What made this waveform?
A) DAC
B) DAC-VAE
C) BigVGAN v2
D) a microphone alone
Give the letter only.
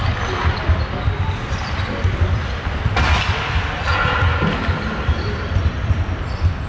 D